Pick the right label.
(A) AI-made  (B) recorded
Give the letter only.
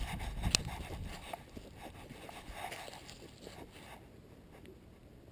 B